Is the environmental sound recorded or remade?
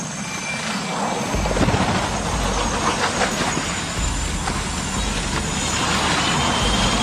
recorded